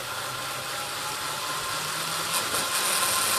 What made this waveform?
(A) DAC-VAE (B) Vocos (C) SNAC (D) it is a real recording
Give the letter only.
D